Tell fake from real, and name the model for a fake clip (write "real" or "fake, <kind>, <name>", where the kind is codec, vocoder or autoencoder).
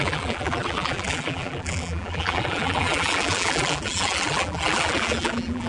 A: fake, vocoder, BigVGAN v2